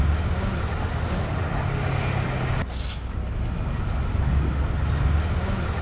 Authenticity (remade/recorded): recorded